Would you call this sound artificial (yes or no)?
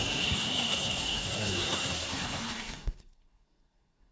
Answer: yes